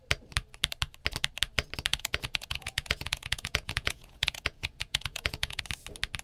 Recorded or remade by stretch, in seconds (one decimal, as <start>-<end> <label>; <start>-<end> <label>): 0.0-1.9 recorded; 1.9-5.6 remade; 5.6-6.2 recorded